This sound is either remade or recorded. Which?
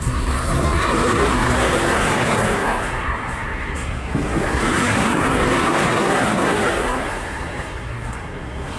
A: remade